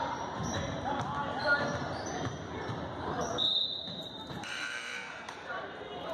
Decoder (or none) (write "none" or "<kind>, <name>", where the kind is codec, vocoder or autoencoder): vocoder, BigVGAN v2